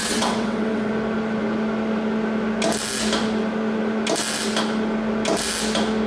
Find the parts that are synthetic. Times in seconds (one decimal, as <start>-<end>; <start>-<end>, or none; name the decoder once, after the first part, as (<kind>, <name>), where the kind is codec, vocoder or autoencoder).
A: 0.0-0.9 (vocoder, WaveNeXt)

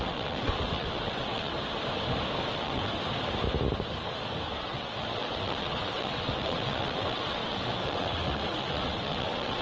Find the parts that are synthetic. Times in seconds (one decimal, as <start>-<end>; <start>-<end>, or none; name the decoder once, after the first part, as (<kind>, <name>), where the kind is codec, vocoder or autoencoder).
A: 0.0-1.5 (vocoder, WaveNeXt); 2.5-2.9; 4.6-9.6

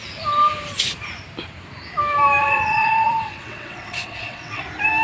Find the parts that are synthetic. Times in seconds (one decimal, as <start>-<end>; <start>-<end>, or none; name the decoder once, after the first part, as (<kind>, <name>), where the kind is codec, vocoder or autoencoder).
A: 2.4-4.6 (vocoder, WaveNeXt)

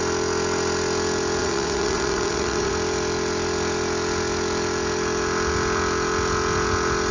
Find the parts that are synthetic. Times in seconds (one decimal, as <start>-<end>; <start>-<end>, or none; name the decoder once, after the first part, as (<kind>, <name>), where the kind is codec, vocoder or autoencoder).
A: 1.4-2.7 (vocoder, WaveNeXt)